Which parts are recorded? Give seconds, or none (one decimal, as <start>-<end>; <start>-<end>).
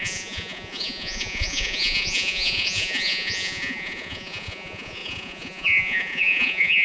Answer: none